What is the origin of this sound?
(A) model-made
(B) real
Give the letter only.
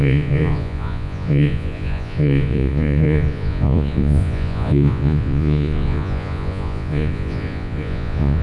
A